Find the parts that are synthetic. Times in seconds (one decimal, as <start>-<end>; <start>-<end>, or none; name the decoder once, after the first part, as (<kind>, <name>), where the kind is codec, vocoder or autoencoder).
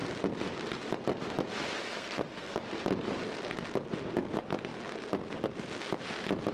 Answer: 1.8-2.6 (codec, SNAC)